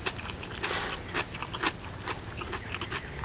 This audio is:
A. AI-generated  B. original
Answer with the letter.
B